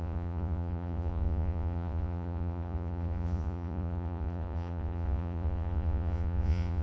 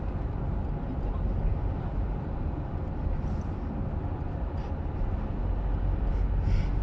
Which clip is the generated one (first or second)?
first